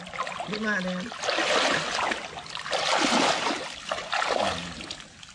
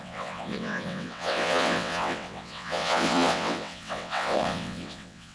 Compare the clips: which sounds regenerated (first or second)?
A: second